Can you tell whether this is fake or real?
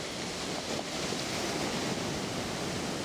real